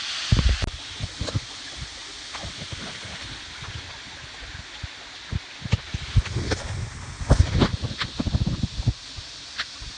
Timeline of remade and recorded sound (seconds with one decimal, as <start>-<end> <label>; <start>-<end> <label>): 0.0-10.0 recorded